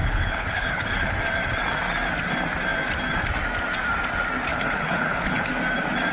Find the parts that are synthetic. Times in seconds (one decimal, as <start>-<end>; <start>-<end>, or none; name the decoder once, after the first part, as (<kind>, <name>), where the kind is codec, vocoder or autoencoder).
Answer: 0.0-1.2 (codec, HILCodec); 4.5-5.5